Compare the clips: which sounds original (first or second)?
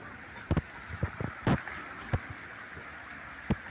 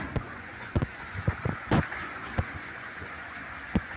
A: first